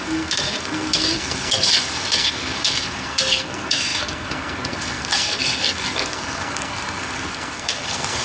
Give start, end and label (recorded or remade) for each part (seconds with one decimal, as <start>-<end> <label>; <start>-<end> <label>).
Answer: 0.0-8.2 remade